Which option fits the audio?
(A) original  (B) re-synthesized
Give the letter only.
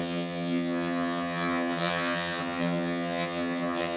B